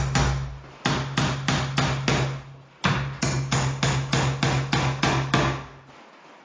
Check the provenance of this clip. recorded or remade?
recorded